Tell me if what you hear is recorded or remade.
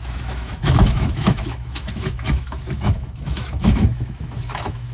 remade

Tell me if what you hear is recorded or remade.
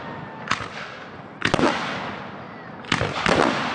recorded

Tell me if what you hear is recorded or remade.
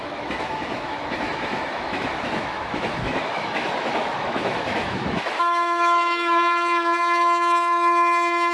remade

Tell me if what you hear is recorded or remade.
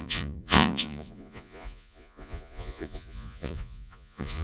remade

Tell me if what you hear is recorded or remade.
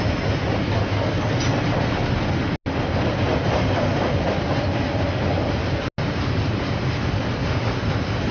recorded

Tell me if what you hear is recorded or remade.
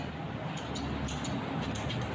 recorded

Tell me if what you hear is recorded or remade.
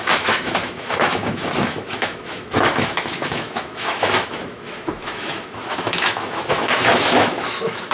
remade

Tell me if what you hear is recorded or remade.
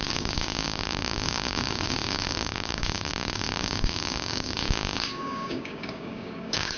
remade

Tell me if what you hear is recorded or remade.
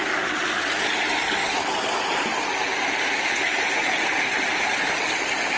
recorded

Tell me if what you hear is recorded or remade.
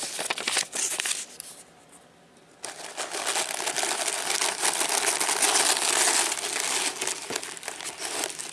recorded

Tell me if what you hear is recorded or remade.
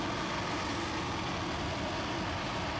recorded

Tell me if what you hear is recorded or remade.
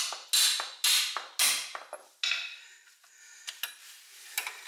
recorded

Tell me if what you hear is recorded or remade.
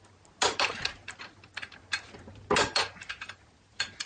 recorded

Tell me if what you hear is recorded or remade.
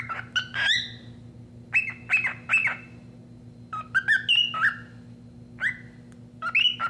recorded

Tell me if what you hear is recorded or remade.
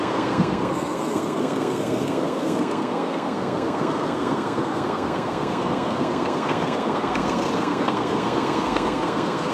remade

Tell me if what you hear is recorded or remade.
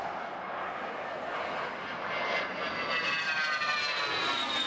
recorded